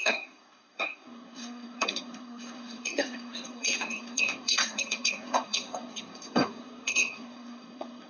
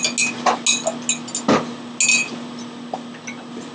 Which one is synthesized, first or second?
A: first